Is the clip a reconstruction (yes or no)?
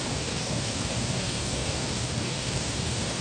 yes